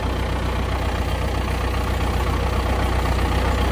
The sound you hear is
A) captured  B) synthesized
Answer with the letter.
A